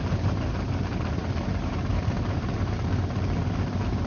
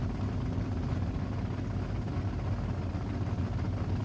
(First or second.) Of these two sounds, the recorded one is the second